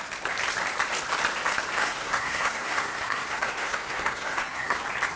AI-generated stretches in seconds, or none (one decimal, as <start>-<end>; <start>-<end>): 1.8-4.8